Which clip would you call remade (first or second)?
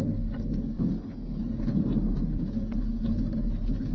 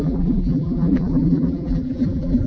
second